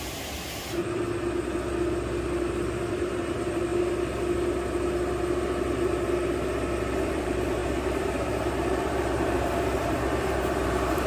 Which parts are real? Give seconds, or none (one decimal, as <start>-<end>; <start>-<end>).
0.8-2.9; 3.7-7.1